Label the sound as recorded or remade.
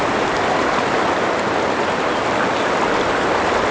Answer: recorded